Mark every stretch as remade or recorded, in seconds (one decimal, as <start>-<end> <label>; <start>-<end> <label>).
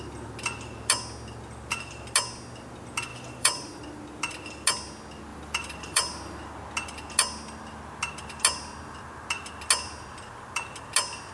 0.0-3.1 recorded; 3.1-3.8 remade; 3.8-5.3 recorded; 5.3-6.4 remade; 6.4-11.3 recorded